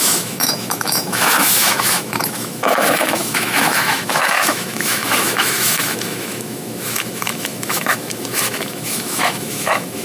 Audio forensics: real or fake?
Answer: fake